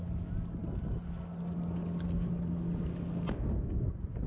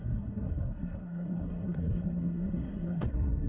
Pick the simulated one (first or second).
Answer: second